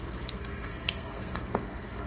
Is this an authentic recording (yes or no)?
no